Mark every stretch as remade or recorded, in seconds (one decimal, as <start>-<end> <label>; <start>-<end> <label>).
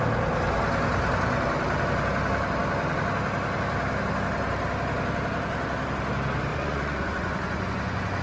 0.0-6.5 recorded; 6.5-8.2 remade